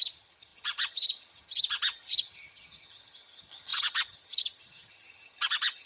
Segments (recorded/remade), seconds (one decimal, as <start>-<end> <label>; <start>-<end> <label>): 0.0-5.9 remade